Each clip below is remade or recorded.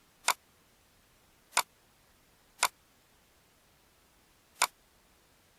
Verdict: recorded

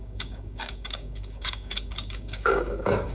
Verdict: remade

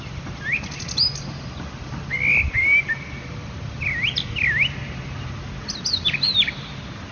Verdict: recorded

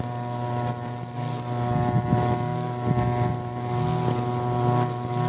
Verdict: recorded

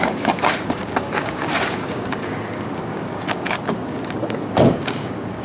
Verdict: remade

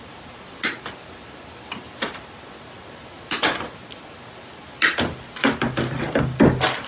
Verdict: recorded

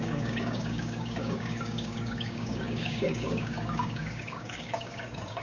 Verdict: remade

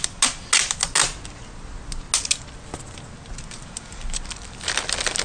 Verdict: recorded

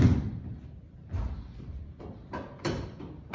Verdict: recorded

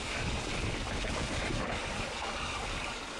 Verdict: remade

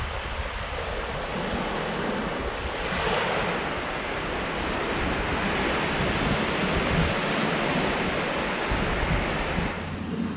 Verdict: recorded